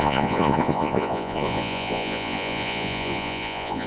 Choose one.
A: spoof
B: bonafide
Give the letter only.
A